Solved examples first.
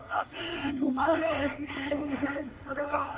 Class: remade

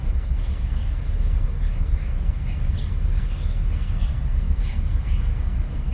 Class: remade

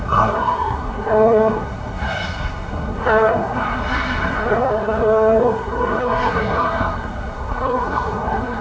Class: remade